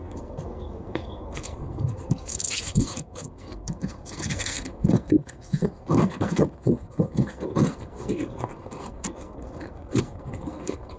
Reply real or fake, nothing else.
fake